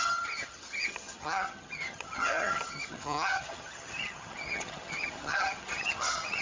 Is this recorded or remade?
remade